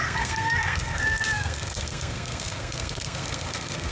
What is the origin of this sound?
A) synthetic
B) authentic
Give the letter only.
A